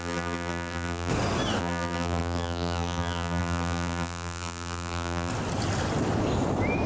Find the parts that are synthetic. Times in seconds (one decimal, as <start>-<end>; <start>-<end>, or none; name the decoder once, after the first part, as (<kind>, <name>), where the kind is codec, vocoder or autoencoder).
0.0-1.1 (vocoder, BigVGAN v2); 1.6-5.3